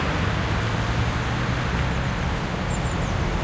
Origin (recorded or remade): recorded